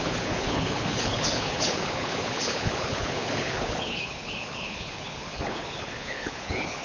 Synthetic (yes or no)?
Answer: yes